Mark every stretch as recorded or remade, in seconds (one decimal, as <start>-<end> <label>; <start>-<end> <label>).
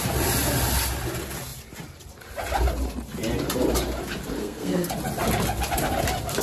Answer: 0.0-4.4 recorded; 4.4-4.9 remade; 4.9-6.4 recorded